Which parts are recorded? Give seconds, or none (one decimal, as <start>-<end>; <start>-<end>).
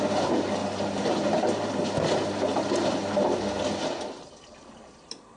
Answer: 0.0-0.6; 1.7-2.5; 3.0-5.4